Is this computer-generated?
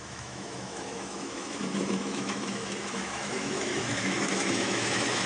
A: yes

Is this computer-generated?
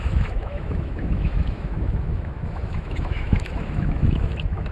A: yes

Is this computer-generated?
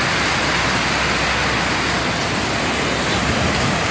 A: no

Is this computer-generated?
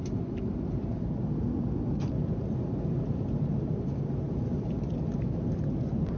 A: no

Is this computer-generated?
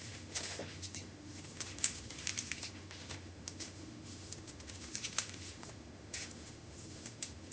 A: yes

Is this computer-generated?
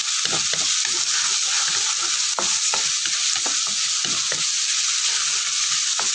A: no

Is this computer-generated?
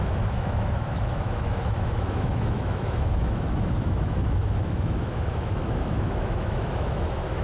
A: yes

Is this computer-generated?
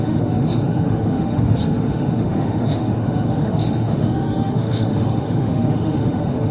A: yes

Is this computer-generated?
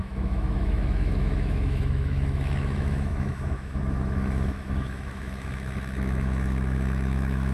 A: yes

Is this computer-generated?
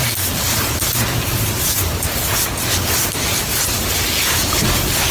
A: no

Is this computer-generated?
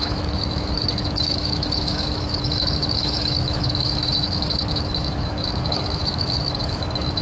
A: yes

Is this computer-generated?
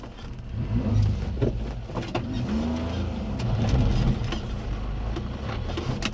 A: no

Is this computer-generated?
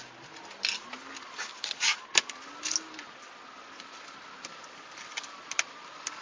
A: no